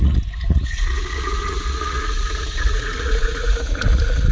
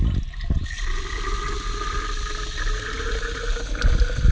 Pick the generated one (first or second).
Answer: first